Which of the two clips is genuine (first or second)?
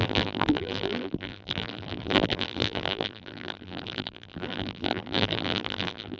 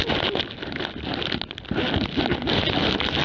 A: second